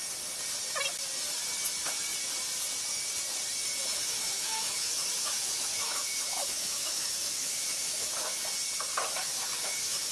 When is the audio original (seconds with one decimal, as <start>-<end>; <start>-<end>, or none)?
0.0-3.9; 8.4-9.2